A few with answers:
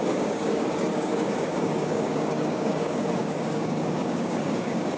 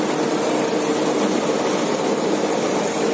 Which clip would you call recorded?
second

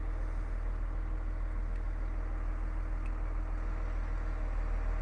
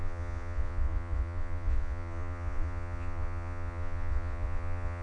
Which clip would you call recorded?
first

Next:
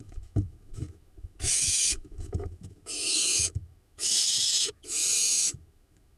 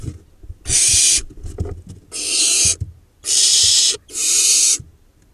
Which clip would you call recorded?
second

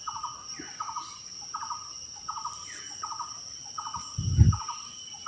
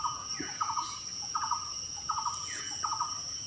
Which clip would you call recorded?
first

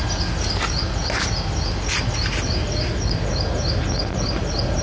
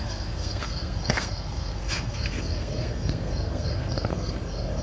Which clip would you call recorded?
first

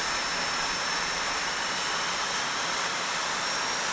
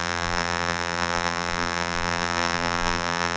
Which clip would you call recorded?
first